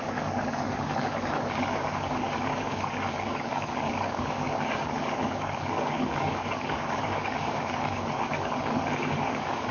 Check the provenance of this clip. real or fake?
fake